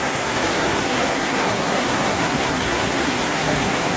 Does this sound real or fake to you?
fake